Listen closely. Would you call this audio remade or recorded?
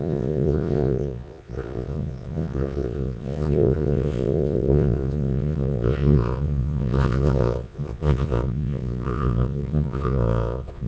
remade